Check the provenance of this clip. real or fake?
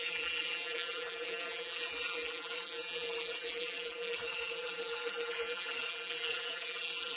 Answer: fake